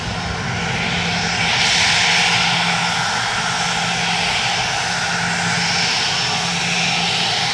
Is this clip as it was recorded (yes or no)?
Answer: yes